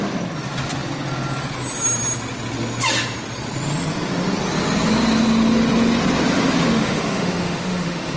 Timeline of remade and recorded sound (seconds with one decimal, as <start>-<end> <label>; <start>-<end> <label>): 0.0-6.7 recorded; 6.7-8.2 remade